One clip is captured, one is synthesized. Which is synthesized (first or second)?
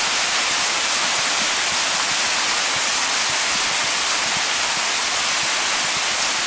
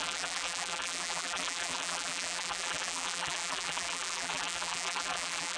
second